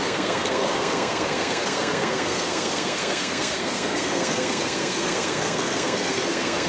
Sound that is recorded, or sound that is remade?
remade